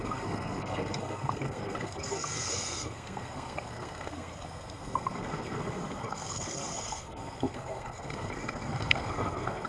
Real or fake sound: fake